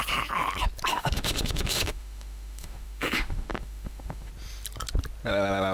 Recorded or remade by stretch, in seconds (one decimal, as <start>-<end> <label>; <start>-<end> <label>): 0.0-0.9 recorded; 0.9-4.3 remade; 4.3-5.7 recorded